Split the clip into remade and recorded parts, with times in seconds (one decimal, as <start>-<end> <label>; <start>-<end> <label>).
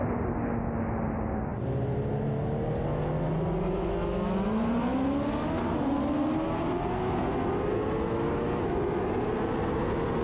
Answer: 0.0-10.2 recorded